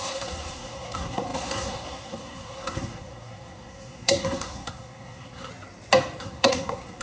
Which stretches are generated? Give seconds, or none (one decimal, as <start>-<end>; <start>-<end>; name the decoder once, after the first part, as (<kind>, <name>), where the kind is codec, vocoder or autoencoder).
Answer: 0.0-5.5 (codec, SNAC); 6.2-7.0